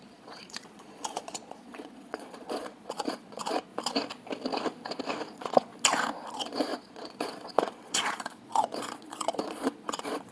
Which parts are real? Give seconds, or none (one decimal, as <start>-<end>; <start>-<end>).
3.7-5.3; 5.7-6.3